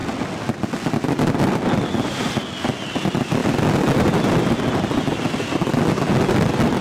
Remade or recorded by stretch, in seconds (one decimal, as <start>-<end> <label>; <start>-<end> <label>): 0.0-3.4 recorded; 3.4-4.7 remade; 4.7-6.8 recorded